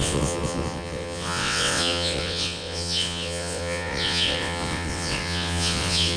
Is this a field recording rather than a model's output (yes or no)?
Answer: no